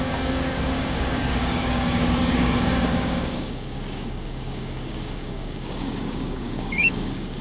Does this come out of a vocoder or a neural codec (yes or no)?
yes